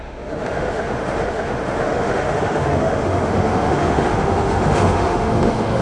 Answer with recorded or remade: remade